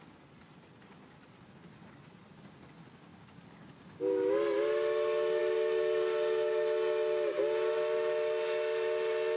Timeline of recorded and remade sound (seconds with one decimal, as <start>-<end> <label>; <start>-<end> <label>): 0.0-9.4 recorded